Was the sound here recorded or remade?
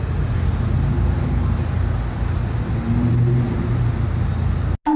recorded